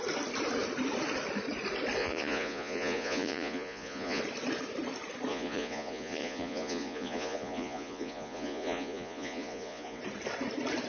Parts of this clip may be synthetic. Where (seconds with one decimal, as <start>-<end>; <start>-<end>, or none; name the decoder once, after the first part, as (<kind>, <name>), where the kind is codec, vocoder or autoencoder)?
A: 2.0-4.2 (vocoder, Vocos); 5.3-10.0